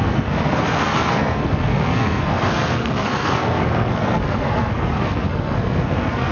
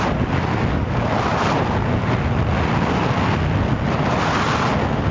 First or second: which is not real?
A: first